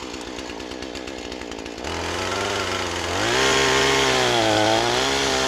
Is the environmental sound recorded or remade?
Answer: recorded